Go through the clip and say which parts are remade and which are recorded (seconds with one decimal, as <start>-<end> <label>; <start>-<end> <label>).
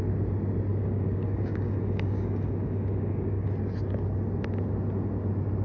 0.0-0.7 recorded; 0.7-3.5 remade; 3.5-5.6 recorded